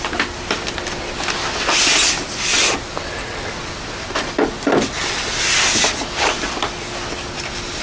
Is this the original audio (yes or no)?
yes